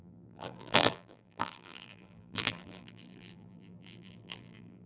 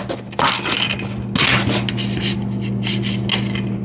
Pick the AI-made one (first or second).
first